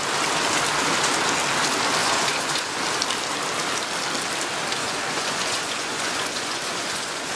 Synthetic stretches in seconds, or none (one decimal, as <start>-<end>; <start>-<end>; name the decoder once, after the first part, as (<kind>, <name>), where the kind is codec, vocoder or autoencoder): 2.0-2.8 (vocoder, Vocos); 4.8-7.4